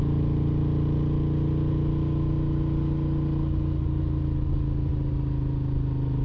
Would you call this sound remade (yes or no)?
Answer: no